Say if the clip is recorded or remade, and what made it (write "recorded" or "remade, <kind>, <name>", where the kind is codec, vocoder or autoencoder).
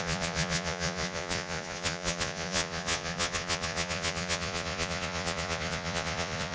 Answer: remade, vocoder, Vocos